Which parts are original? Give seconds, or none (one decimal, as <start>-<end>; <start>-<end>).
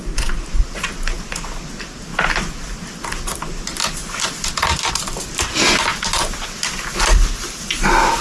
0.0-8.2